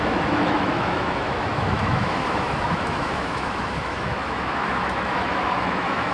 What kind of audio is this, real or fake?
fake